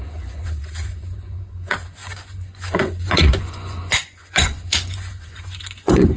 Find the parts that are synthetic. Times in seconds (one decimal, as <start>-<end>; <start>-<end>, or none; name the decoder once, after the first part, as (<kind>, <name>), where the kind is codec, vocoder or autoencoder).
0.0-6.2 (vocoder, Vocos)